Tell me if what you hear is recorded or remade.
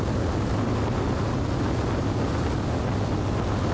recorded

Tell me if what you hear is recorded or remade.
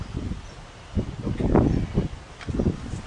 recorded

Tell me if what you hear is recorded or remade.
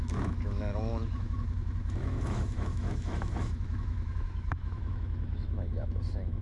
remade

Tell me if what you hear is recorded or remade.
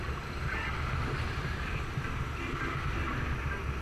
recorded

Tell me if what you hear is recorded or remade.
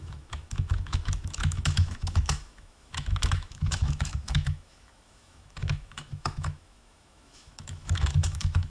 remade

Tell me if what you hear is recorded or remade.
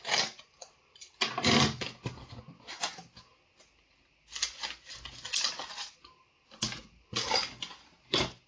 recorded